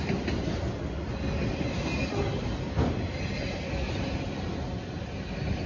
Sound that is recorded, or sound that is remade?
recorded